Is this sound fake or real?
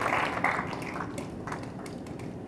real